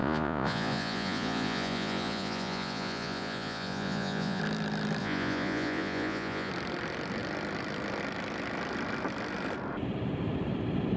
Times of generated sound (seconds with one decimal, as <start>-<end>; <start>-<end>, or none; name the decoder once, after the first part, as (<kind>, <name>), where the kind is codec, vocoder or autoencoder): 0.0-4.4 (vocoder, Vocos); 5.0-6.5